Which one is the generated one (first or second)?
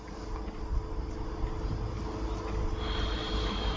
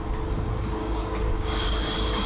second